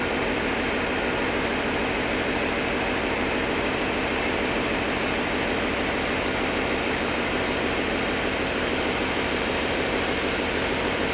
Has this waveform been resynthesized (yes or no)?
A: yes